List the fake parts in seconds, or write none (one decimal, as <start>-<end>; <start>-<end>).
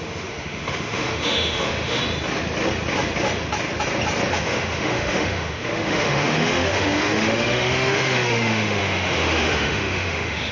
0.0-2.0; 4.3-10.5